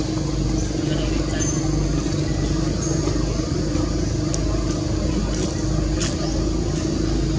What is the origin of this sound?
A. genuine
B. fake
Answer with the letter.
A